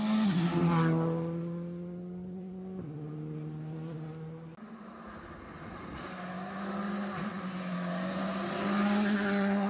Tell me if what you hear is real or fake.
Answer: real